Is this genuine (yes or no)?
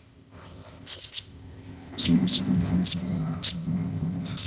no